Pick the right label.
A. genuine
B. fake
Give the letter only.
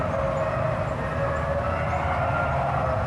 A